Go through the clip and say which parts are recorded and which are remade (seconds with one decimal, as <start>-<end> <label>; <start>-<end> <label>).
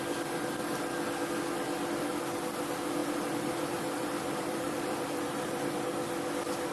0.0-3.0 recorded; 3.0-5.8 remade; 5.8-6.7 recorded